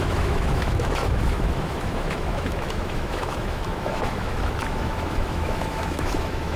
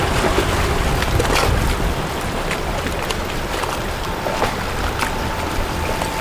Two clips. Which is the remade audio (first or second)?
first